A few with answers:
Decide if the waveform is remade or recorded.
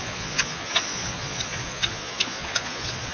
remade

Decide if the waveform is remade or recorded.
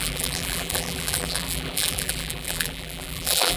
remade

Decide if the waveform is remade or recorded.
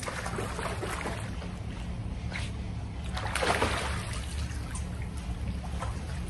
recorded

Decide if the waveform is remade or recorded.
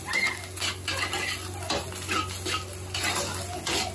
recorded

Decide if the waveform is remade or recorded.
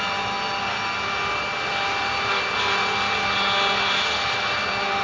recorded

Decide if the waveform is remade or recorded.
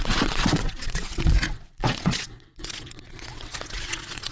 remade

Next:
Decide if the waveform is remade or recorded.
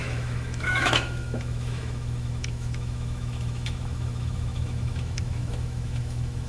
remade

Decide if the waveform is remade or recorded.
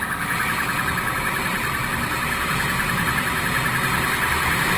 recorded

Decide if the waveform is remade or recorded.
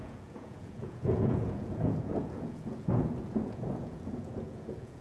remade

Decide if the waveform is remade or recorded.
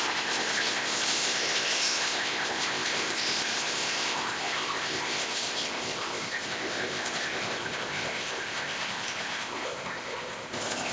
remade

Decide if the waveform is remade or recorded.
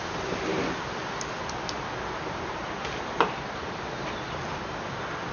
recorded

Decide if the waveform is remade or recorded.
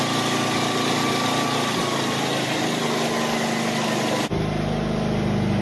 recorded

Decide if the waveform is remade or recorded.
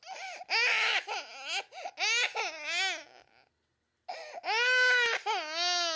recorded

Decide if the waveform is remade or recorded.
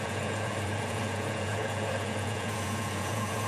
remade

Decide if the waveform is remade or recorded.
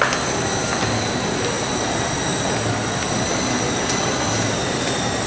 recorded